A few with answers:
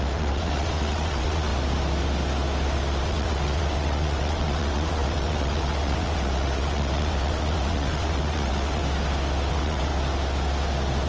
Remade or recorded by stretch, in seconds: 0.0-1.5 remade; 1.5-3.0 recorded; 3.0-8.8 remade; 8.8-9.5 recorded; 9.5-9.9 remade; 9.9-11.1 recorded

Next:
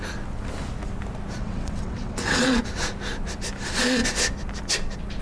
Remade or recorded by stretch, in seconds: 0.0-1.4 recorded; 1.4-2.6 remade; 2.6-5.2 recorded

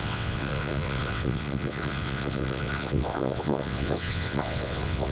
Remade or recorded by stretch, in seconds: 0.0-5.1 remade

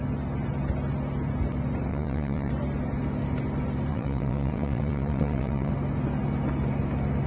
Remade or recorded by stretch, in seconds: 0.0-1.9 recorded; 1.9-2.5 remade; 2.5-3.9 recorded; 3.9-5.7 remade; 5.7-7.3 recorded